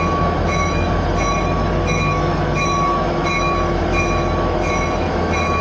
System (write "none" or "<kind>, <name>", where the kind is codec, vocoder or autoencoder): autoencoder, DAC-VAE